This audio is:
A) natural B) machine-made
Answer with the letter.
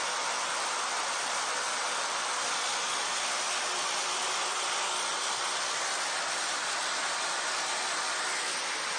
A